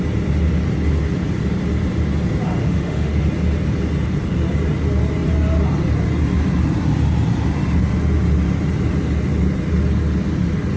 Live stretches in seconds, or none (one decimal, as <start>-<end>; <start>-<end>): 0.0-2.6; 3.2-10.8

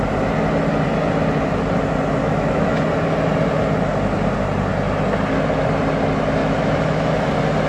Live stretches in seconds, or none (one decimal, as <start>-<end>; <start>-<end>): 0.0-2.2; 2.8-6.4; 7.3-7.7